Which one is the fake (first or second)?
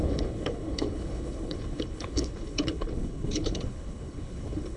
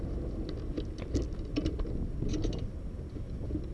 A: first